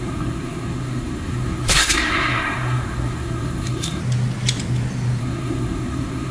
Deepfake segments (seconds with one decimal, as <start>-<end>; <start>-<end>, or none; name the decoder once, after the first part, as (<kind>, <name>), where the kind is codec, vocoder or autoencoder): 0.0-4.0 (codec, SNAC); 5.2-6.3